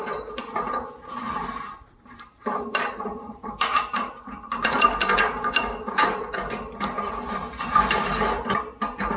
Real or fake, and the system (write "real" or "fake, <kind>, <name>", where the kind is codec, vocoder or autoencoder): fake, vocoder, BigVGAN v2